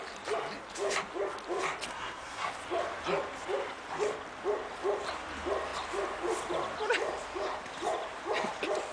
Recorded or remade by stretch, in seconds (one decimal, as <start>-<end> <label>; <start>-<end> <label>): 0.0-1.9 recorded; 1.9-2.5 remade; 2.5-8.9 recorded